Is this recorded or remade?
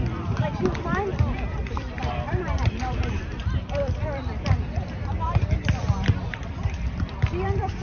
remade